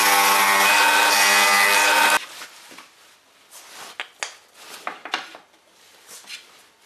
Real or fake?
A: real